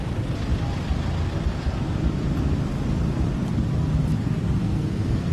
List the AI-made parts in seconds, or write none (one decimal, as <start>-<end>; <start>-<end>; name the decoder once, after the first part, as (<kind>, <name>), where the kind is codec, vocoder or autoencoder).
4.6-5.3 (codec, SNAC)